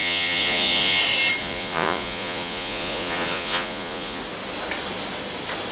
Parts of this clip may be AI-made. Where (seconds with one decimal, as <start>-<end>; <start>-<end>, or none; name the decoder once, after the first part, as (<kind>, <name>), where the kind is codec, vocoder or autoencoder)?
0.0-1.0 (vocoder, Vocos); 1.4-4.2